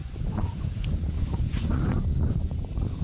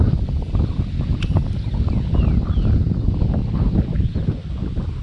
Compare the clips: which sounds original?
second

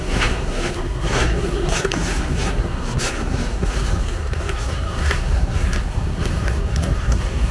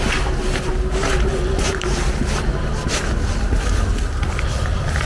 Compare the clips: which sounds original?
second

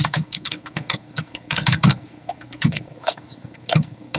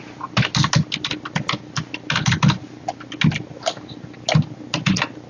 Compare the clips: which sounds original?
second